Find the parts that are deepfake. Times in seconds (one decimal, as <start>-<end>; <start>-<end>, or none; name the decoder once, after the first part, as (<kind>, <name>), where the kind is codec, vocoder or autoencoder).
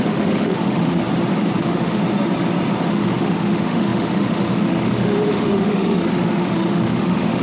0.0-1.0 (autoencoder, DAC-VAE); 1.6-2.0; 2.8-7.4